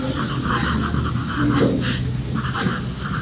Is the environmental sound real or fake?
real